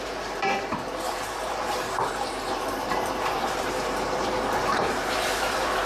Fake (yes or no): yes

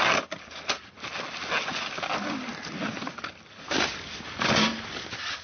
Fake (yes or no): yes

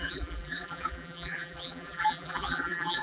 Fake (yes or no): yes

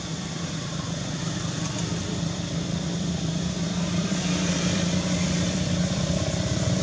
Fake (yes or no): yes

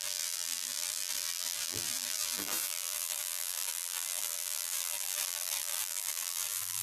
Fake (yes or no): yes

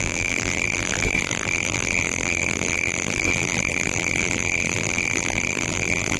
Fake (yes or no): yes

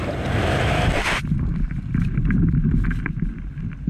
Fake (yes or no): no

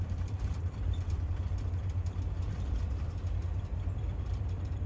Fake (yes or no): yes